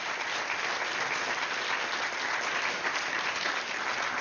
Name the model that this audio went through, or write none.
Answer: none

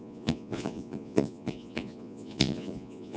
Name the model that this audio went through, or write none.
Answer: vocoder, Vocos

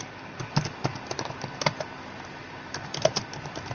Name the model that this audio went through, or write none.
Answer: none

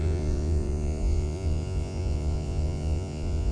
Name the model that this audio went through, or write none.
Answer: vocoder, Vocos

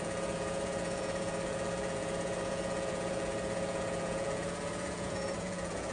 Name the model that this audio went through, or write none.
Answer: vocoder, Vocos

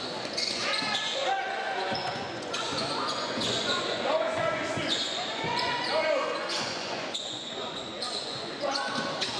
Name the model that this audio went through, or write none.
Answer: vocoder, Vocos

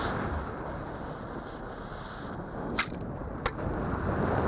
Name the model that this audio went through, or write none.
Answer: none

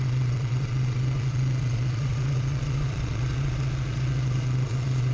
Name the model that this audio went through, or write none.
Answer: vocoder, Vocos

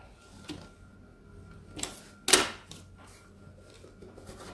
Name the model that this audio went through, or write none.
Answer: none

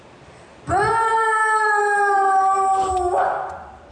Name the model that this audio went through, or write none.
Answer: none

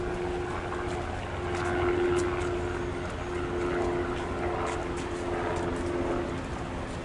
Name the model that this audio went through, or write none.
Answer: none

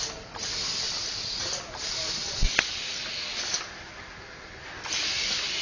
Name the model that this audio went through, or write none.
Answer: none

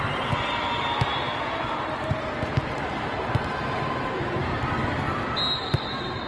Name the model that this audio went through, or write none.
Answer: none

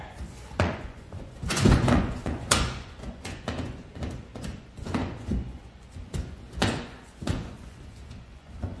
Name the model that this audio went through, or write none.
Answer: vocoder, Vocos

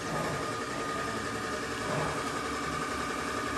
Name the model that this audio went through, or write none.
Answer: none